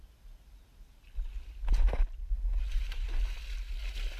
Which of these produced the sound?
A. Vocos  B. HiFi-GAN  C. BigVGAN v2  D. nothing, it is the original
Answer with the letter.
D